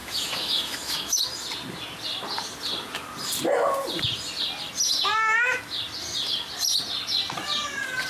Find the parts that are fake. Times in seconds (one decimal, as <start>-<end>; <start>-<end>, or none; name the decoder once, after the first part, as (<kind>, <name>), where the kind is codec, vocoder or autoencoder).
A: 0.0-1.2 (autoencoder, DAC-VAE)